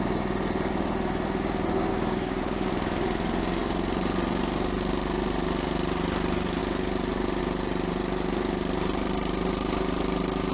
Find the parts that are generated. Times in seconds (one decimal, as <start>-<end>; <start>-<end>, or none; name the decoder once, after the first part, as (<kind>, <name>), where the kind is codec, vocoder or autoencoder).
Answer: 1.9-2.7 (codec, DAC)